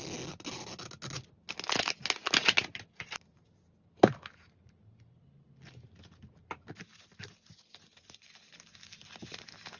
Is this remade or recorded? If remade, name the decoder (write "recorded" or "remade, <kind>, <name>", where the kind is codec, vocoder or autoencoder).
recorded